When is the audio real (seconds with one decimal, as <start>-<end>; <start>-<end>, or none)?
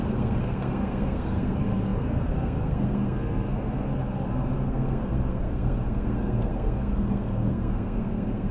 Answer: none